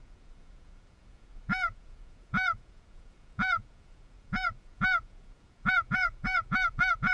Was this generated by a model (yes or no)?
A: yes